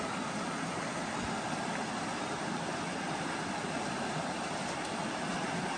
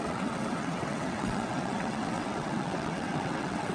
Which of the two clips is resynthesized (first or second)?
second